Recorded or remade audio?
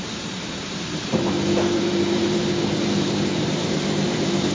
remade